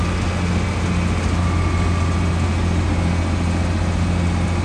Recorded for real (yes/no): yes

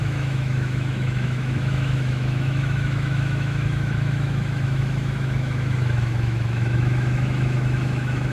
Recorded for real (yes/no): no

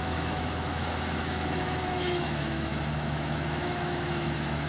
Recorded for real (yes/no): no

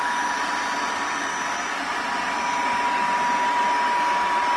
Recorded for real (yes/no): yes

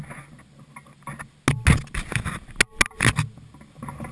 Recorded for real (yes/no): yes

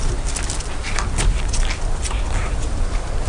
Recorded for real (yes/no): yes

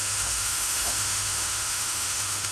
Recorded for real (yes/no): no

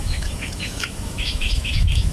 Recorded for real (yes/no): no